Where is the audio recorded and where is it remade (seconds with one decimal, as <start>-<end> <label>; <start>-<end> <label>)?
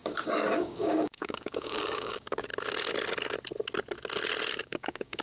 0.0-2.5 remade; 2.5-4.5 recorded; 4.5-5.2 remade